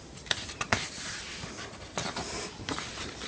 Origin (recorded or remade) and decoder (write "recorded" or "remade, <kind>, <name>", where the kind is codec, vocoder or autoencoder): recorded